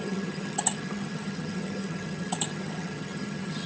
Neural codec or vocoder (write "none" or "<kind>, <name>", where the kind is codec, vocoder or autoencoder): vocoder, HiFi-GAN